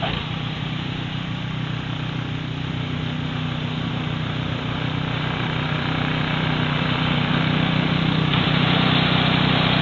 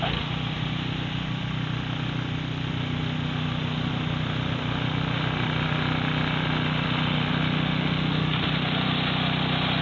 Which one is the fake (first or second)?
first